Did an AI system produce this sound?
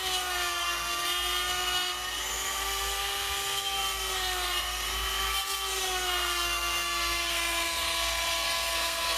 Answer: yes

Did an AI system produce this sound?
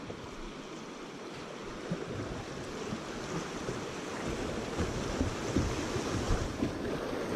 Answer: no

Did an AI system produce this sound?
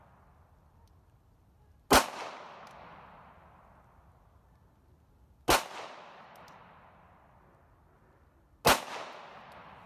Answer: no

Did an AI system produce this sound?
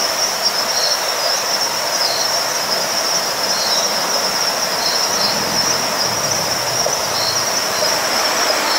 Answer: no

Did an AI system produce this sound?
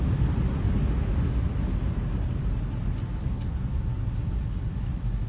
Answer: no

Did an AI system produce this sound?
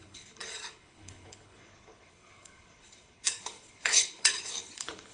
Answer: yes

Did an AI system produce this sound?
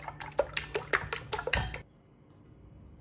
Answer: no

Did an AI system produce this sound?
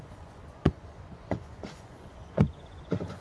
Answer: yes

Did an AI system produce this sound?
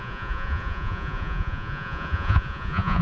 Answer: yes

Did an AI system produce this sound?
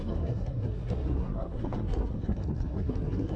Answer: yes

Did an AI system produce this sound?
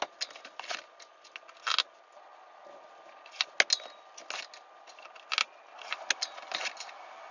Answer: no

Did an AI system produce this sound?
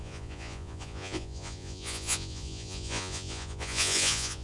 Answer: yes